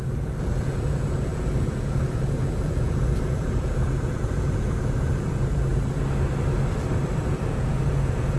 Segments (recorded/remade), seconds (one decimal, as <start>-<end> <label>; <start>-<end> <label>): 0.0-5.7 remade; 5.7-7.3 recorded; 7.3-8.4 remade